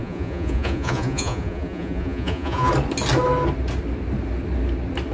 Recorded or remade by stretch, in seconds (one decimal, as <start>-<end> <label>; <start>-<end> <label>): 0.0-2.7 remade; 2.7-5.1 recorded